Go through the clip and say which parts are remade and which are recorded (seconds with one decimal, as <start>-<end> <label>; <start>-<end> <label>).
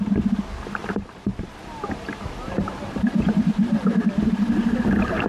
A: 0.0-0.8 recorded; 0.8-4.0 remade; 4.0-5.3 recorded